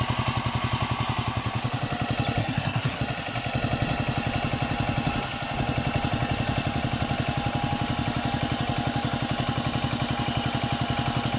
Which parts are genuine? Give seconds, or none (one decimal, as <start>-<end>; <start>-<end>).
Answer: 0.0-2.4; 3.0-11.4